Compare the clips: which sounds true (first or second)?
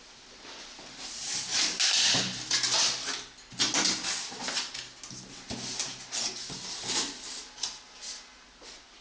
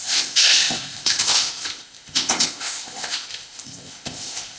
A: first